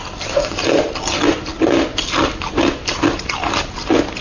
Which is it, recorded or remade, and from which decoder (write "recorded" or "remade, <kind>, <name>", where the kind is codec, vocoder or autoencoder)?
recorded